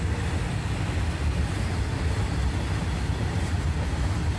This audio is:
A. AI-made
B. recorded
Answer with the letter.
B